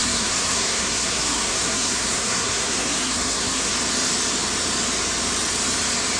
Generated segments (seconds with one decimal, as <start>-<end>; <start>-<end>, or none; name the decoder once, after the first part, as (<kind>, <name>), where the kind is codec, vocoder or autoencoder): 0.0-3.7 (codec, SNAC)